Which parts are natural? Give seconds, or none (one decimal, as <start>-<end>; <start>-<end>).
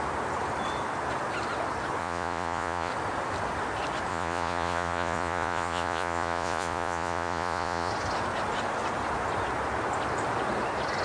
0.0-2.0; 2.9-4.1; 7.9-11.0